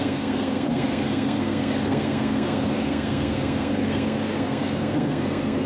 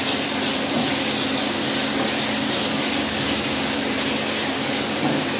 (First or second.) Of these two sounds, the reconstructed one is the first